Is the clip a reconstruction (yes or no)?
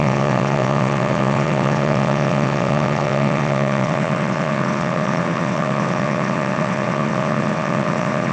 yes